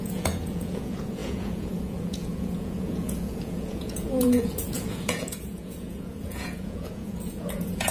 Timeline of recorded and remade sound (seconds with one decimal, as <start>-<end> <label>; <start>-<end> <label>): 0.0-7.9 remade